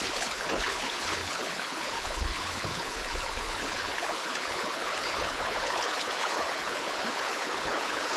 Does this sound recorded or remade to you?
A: remade